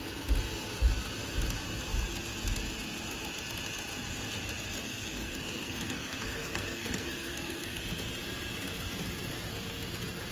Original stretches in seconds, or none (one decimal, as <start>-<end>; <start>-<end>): 0.0-4.8; 7.8-10.3